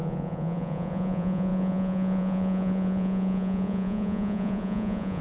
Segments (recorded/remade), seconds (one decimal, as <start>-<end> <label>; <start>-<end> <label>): 0.0-5.2 remade